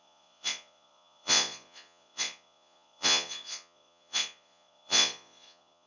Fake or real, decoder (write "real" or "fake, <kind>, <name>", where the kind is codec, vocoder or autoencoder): fake, vocoder, Vocos